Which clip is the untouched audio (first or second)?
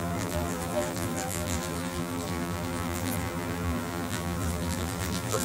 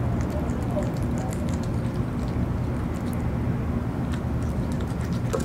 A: second